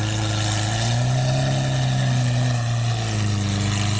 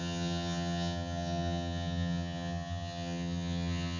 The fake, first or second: second